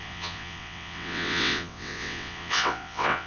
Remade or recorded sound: remade